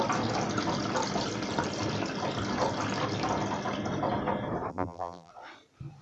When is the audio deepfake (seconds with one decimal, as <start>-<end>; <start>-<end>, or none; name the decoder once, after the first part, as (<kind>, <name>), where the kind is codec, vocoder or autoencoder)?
4.7-5.3 (vocoder, BigVGAN v2)